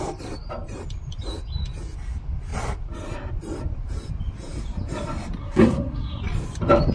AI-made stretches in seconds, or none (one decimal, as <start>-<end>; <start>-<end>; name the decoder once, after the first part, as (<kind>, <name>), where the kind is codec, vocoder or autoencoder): 5.4-6.2 (codec, SNAC)